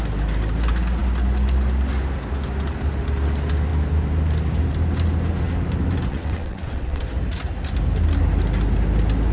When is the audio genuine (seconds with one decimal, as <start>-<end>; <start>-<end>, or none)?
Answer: 0.0-6.1; 7.0-9.3